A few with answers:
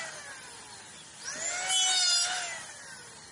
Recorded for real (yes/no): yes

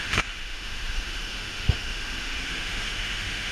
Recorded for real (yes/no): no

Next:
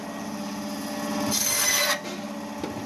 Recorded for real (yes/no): yes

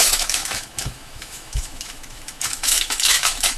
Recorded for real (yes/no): no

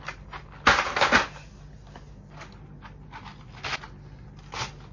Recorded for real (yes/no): yes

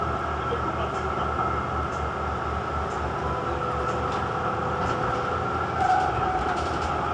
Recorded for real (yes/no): yes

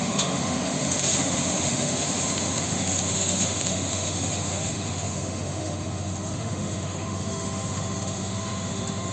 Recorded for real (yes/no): no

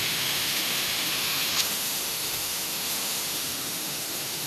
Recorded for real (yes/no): no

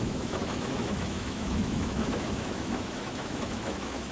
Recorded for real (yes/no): no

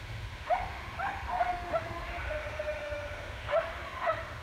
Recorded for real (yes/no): no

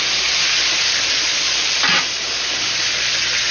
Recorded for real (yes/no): yes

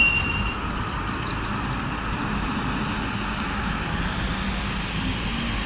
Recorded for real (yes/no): yes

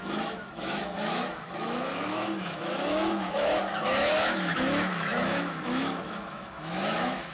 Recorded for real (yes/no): no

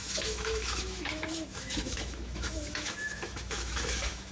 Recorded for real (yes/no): no